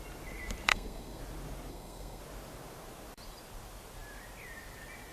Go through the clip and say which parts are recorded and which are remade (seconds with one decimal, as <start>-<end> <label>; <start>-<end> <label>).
0.0-0.7 recorded; 0.7-1.2 remade; 1.2-1.7 recorded; 1.7-2.2 remade; 2.2-5.1 recorded